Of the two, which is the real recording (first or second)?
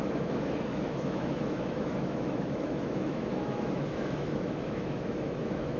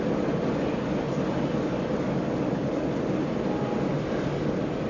second